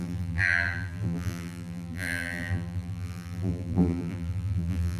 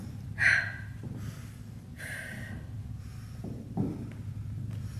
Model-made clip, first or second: first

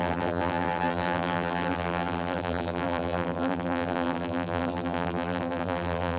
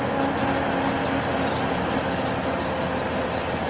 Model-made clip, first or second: first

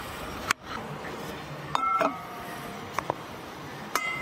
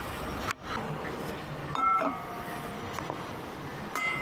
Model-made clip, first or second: first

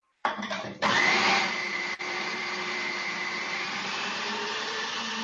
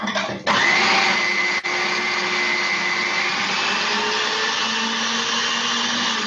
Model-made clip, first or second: first